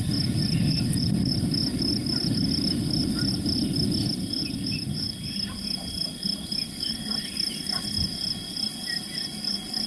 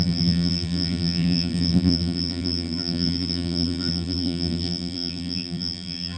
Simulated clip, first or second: second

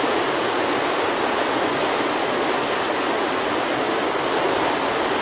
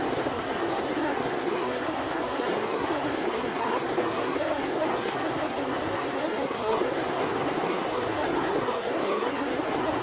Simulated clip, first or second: second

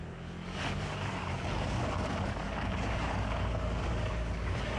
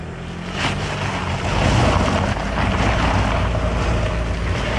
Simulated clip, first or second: first